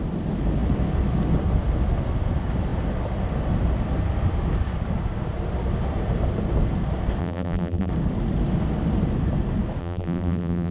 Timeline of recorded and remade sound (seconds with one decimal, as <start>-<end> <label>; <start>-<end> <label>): 0.0-7.2 recorded; 7.2-7.9 remade; 7.9-9.8 recorded; 9.8-10.7 remade